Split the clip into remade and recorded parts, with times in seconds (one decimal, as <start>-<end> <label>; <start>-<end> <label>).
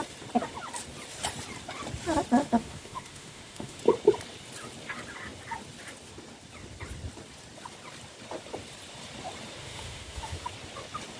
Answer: 0.0-2.4 recorded; 2.4-3.8 remade; 3.8-9.6 recorded; 9.6-10.5 remade; 10.5-11.2 recorded